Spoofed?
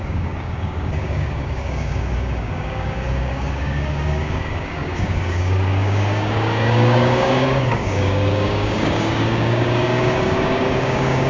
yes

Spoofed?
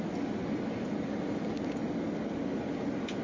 no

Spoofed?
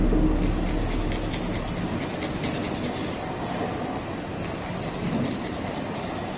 no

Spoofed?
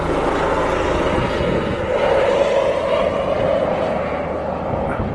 no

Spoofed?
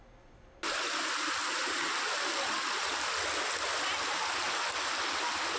no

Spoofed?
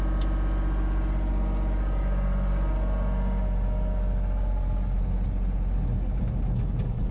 no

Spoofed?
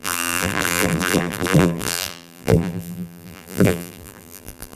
yes